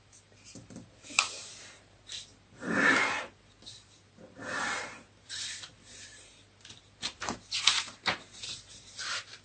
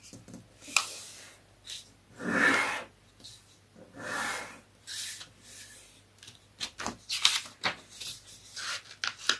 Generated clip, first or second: first